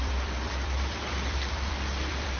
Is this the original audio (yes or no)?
no